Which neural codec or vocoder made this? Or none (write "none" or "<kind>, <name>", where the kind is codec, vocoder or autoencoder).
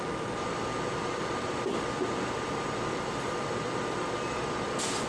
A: none